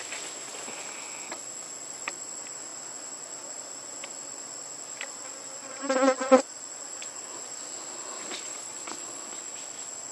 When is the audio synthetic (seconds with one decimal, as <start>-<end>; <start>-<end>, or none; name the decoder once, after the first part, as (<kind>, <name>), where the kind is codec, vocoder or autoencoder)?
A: 5.6-6.9 (vocoder, Vocos); 8.5-9.3